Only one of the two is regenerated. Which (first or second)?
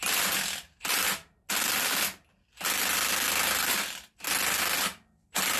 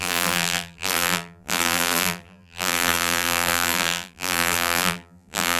second